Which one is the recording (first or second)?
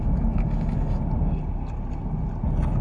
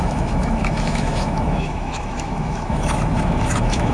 first